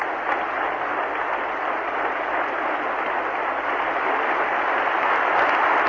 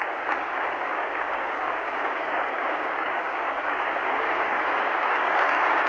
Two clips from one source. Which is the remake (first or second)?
second